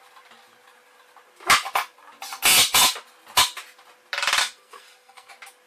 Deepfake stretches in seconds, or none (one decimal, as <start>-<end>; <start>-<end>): 4.4-5.3